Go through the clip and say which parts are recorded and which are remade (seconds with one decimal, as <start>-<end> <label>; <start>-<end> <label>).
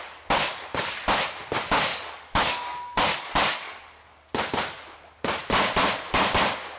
0.0-1.9 recorded; 1.9-4.3 remade; 4.3-6.8 recorded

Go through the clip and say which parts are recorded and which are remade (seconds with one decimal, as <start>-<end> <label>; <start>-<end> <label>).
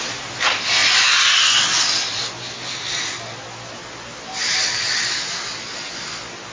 0.0-6.5 recorded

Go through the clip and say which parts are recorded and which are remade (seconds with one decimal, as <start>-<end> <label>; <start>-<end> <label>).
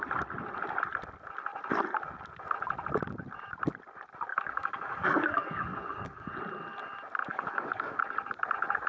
0.0-4.3 recorded; 4.3-6.3 remade; 6.3-7.3 recorded; 7.3-8.0 remade; 8.0-8.9 recorded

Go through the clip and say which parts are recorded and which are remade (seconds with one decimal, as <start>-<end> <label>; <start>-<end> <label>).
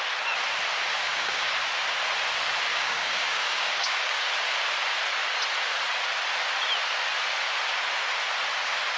0.0-0.9 recorded; 0.9-1.5 remade; 1.5-2.7 recorded; 2.7-4.3 remade; 4.3-9.0 recorded